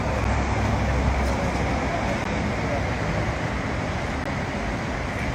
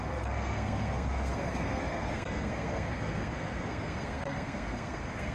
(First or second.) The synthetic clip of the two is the second